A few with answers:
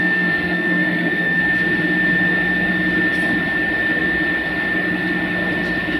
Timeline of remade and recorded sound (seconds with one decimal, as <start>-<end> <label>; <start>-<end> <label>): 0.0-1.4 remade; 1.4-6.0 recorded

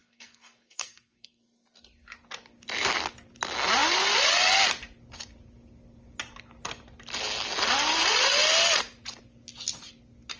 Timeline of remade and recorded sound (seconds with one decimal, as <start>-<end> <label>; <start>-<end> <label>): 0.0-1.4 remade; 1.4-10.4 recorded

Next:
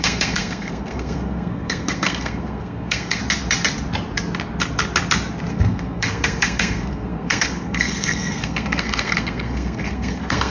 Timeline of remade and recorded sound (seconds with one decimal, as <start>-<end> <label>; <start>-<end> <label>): 0.0-3.2 remade; 3.2-5.5 recorded; 5.5-10.5 remade

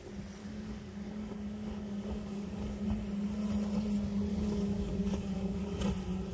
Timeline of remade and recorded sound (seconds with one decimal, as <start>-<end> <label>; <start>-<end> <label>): 0.0-0.4 recorded; 0.4-2.8 remade; 2.8-4.3 recorded; 4.3-5.8 remade; 5.8-6.3 recorded

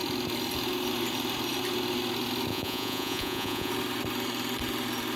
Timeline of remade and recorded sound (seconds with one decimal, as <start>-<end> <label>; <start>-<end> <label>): 0.0-2.5 recorded; 2.5-3.7 remade; 3.7-5.2 recorded

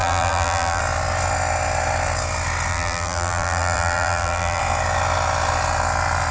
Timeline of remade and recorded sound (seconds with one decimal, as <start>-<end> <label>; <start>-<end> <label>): 0.0-0.8 remade; 0.8-2.7 recorded; 2.7-4.6 remade; 4.6-6.3 recorded